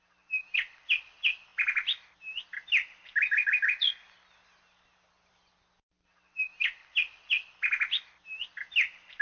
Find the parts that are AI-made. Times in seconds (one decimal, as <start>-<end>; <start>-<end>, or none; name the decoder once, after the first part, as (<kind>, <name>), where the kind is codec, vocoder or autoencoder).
none